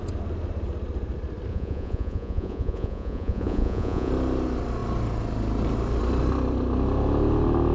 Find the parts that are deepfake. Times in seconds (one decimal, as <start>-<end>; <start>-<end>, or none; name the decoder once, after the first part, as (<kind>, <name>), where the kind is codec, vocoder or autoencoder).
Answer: 1.5-4.1 (vocoder, Vocos)